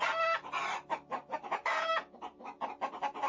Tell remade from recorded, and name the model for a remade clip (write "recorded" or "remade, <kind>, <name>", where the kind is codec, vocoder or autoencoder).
recorded